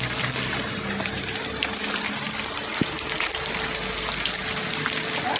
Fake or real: real